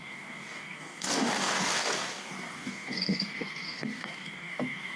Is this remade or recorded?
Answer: remade